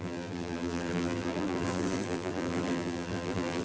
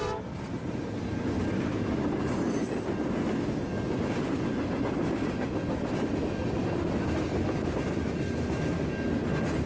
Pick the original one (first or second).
second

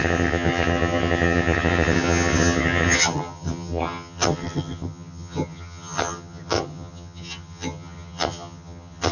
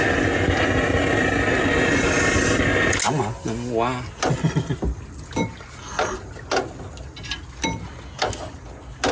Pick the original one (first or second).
second